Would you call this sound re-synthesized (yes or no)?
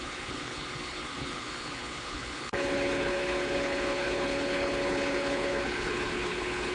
yes